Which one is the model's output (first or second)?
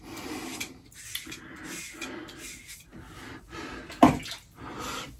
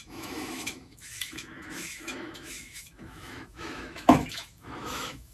second